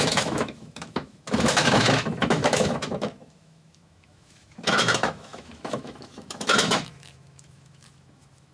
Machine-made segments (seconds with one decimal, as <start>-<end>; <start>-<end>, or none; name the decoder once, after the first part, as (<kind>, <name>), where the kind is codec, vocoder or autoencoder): 0.0-8.5 (autoencoder, DAC-VAE)